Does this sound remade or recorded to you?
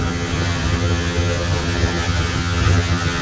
remade